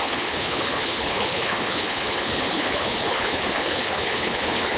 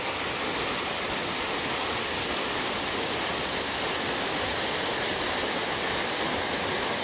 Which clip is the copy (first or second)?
first